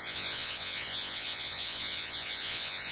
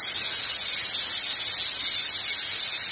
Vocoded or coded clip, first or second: first